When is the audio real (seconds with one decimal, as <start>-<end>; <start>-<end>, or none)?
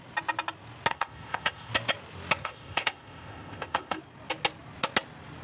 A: 0.0-0.9; 1.7-2.4; 4.0-5.4